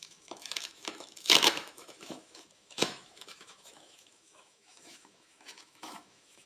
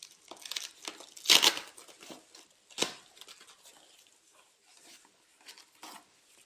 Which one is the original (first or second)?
second